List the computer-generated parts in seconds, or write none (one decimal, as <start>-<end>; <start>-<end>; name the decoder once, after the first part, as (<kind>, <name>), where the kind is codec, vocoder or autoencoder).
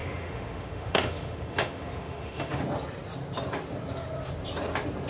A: 0.0-2.6 (autoencoder, DAC-VAE)